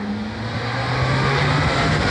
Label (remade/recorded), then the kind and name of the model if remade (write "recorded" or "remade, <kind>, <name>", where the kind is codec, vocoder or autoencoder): recorded